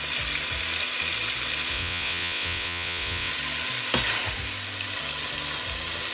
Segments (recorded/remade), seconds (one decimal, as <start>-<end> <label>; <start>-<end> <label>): 0.0-1.7 recorded; 1.7-3.3 remade; 3.3-6.1 recorded